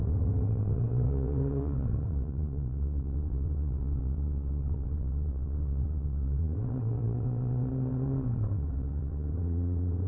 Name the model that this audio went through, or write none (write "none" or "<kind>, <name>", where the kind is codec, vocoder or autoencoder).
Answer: vocoder, WaveNeXt